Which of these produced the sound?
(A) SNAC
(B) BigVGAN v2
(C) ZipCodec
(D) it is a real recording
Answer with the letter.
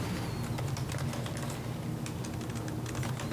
D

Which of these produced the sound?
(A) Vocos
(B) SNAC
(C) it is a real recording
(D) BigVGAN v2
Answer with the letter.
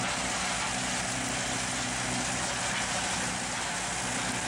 C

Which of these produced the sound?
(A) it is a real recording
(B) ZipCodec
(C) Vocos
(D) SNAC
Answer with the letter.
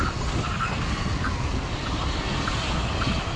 A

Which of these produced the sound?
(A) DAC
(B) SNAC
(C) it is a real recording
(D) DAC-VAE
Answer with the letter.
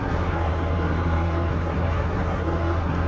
B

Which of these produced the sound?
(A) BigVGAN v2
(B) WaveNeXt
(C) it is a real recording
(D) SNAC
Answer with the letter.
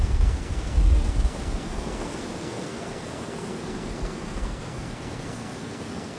D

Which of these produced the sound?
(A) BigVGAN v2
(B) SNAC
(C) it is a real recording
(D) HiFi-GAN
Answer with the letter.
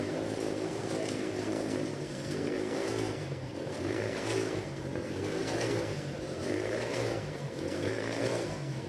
B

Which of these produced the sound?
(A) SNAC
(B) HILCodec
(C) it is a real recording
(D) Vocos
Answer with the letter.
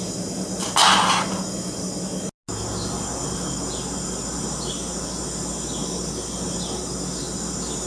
C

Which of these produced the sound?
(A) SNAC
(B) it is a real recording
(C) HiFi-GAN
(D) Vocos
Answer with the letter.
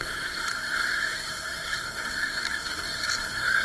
A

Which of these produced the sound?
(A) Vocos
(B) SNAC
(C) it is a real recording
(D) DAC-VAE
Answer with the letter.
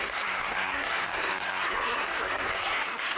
B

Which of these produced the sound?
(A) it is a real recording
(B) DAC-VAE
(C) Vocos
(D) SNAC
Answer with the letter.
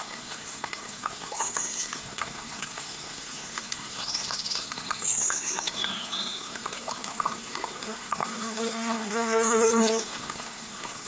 D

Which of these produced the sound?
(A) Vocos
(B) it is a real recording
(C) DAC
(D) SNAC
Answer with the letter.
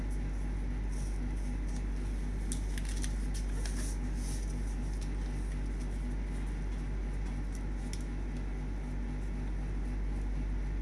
B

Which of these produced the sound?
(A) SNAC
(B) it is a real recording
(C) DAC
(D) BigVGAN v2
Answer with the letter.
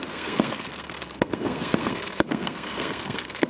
A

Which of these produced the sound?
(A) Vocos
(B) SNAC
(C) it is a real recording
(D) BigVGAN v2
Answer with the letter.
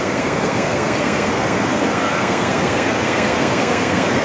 B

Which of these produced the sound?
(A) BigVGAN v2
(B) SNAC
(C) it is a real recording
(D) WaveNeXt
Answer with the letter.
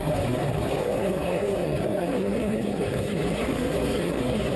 B